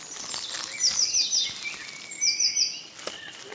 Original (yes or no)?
yes